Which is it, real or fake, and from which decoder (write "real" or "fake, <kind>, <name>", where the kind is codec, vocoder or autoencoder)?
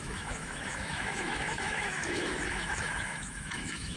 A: fake, autoencoder, DAC-VAE